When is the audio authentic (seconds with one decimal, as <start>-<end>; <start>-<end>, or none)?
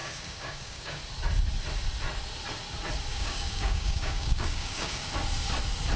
1.0-3.1; 5.1-6.0